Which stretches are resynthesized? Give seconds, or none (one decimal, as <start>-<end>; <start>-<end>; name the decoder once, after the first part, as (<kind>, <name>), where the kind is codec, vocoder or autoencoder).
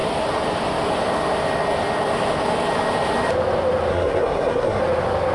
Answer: 3.9-4.8 (codec, SNAC)